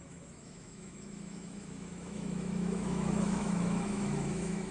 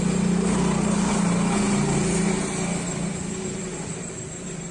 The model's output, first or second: first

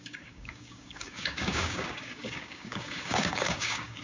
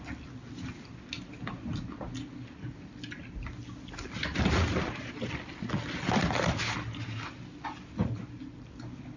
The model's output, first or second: first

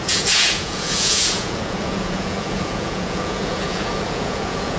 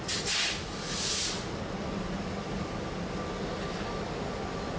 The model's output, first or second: first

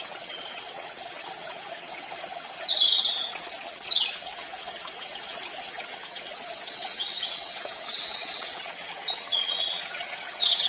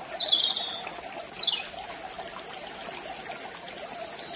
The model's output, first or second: first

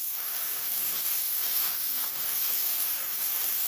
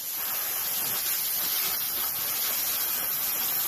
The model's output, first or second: first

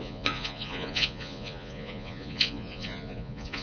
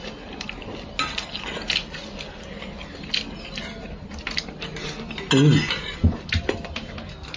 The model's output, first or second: first